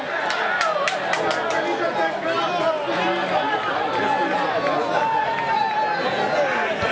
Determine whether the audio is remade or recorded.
recorded